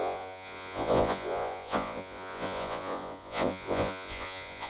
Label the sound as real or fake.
fake